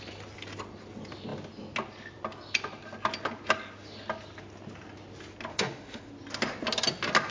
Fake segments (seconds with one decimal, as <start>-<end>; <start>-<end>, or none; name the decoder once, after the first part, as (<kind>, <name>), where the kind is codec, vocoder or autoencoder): 5.5-6.1 (autoencoder, DAC-VAE)